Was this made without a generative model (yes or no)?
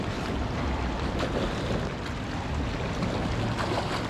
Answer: yes